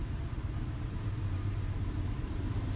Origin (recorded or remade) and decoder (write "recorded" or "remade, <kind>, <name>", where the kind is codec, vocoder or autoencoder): remade, vocoder, BigVGAN v2